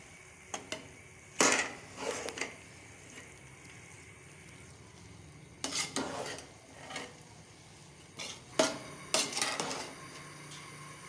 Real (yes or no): yes